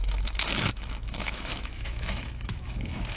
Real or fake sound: fake